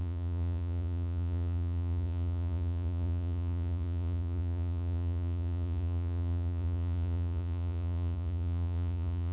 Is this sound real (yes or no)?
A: no